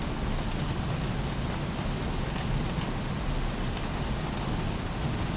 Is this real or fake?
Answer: real